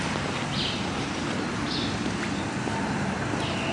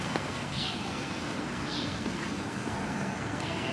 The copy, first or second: second